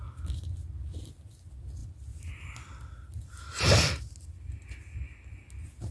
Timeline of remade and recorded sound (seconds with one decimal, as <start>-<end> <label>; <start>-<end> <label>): 0.0-5.9 recorded